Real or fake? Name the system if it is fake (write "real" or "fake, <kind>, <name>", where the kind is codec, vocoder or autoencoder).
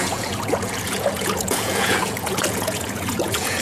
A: fake, vocoder, Vocos